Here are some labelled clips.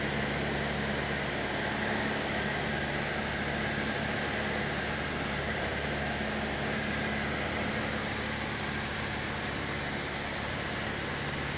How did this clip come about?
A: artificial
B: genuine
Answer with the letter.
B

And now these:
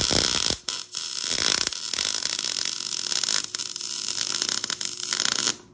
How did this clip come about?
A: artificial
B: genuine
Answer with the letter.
B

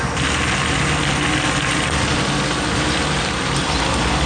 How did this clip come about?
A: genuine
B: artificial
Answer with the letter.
A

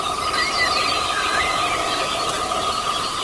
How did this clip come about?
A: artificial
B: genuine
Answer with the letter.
A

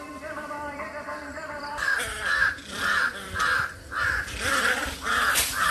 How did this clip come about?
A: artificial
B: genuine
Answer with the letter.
A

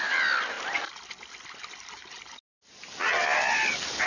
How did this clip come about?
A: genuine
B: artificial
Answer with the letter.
A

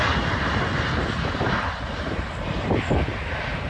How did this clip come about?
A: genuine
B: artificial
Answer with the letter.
A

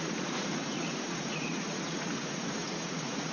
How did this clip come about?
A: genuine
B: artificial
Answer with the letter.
B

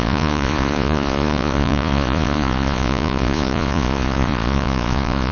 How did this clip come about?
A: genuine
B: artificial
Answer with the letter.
B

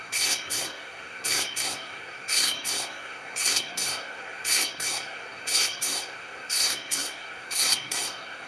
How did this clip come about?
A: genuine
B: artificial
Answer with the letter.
B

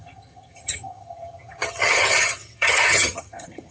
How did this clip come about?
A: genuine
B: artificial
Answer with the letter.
B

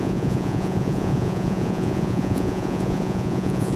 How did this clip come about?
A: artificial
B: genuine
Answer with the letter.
A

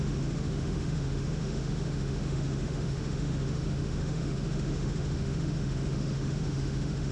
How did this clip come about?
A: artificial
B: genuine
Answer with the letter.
A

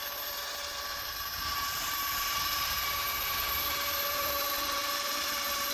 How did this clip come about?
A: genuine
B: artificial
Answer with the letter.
B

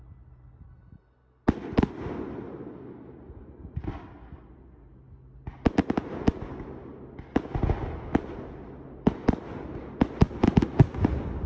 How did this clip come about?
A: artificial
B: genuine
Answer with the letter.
B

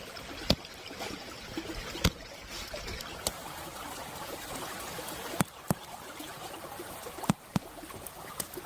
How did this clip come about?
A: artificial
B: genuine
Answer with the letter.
A